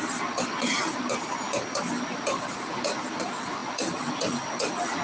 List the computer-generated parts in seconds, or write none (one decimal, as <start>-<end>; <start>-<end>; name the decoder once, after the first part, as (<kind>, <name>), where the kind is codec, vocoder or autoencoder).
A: none